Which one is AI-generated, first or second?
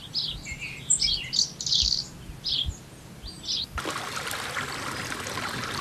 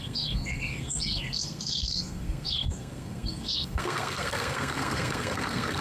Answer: second